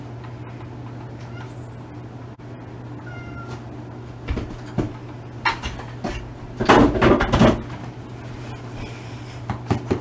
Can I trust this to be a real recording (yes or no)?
yes